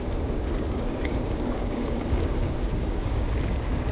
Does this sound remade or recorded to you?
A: remade